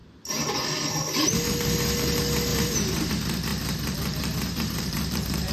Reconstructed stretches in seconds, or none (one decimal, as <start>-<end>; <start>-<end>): 2.5-3.1; 3.5-5.5